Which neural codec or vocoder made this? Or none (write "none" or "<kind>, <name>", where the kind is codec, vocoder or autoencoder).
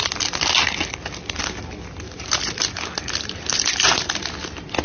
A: none